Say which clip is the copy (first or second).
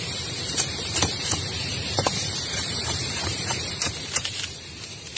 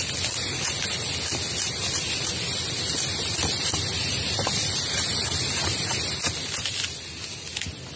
first